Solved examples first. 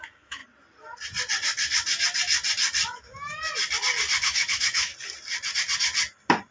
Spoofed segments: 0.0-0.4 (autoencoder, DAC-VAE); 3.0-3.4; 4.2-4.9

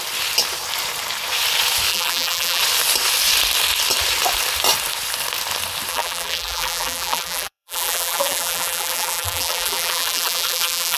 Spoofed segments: 1.9-2.6 (vocoder, BigVGAN v2); 5.9-11.0

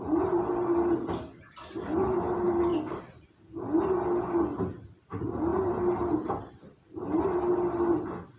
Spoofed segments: none

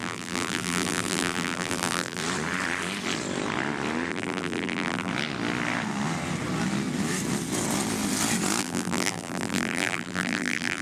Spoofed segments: 0.0-2.2 (vocoder, BigVGAN v2); 4.1-5.1; 8.6-10.8

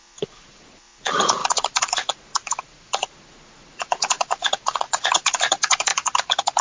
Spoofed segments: 0.0-5.9 (vocoder, Vocos)

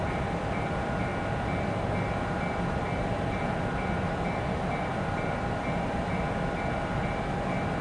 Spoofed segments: 0.0-1.1 (vocoder, BigVGAN v2); 2.5-7.8

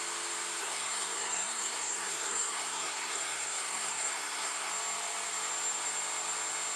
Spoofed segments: 0.6-4.7 (codec, SNAC)

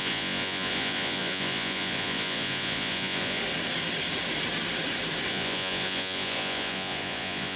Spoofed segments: 0.0-3.4 (vocoder, Vocos); 5.3-7.6